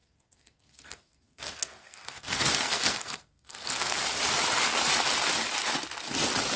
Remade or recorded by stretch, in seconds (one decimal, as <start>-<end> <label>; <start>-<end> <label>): 0.0-4.0 remade; 4.0-6.6 recorded